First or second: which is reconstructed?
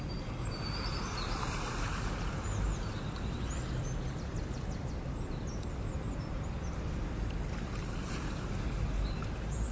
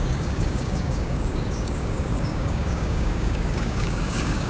second